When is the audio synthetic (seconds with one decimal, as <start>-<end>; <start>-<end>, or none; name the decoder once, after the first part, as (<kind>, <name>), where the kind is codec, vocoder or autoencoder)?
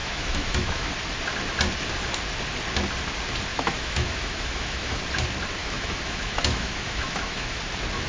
0.0-0.9 (autoencoder, DAC-VAE); 3.5-5.0; 5.6-7.6